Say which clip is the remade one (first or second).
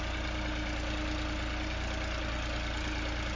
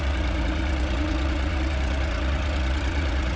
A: second